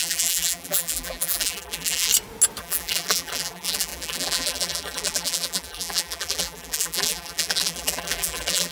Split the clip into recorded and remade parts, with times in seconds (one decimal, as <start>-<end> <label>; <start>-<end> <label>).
0.0-2.1 remade; 2.1-2.6 recorded; 2.6-8.7 remade